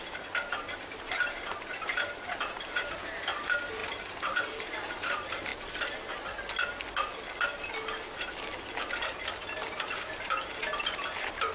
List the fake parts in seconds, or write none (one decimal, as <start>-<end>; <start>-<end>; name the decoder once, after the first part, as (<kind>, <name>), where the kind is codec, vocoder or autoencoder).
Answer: 0.0-5.5 (vocoder, BigVGAN v2); 8.8-11.5